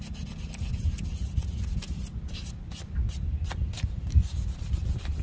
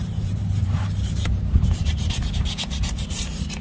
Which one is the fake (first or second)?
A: second